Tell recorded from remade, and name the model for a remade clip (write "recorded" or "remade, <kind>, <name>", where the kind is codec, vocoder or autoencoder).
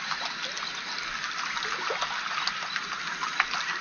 recorded